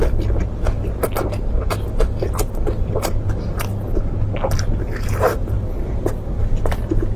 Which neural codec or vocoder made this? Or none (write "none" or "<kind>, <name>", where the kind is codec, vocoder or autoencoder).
none